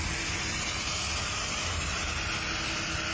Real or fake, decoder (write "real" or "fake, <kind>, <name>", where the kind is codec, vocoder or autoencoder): real